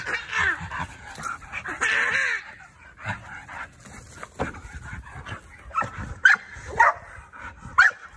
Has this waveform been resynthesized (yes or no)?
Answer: no